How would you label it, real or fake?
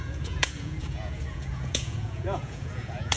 fake